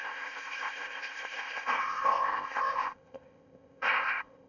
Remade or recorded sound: remade